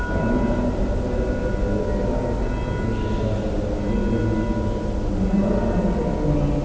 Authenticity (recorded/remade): recorded